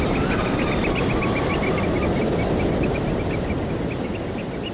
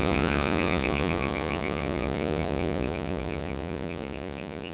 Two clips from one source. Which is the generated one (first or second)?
second